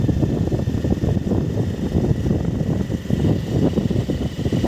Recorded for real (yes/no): yes